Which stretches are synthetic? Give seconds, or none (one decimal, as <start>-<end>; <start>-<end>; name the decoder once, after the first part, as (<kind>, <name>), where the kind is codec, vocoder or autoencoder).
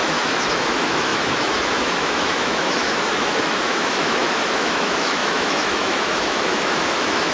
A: 0.0-7.3 (autoencoder, DAC-VAE)